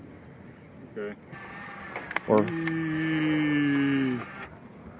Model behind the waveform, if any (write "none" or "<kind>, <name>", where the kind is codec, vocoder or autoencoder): none